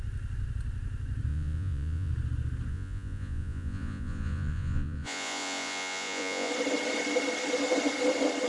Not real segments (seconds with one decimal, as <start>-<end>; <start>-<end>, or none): 1.3-2.1; 2.7-6.5